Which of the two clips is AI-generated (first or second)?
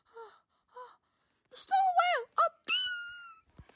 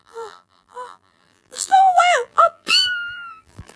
second